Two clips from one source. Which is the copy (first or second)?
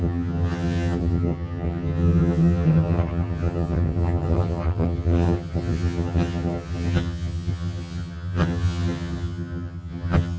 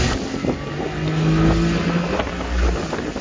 first